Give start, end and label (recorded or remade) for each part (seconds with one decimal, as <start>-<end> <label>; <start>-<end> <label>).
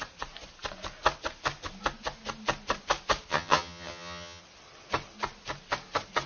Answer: 0.0-3.3 recorded; 3.3-4.4 remade; 4.4-6.3 recorded